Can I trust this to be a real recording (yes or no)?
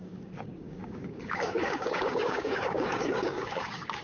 no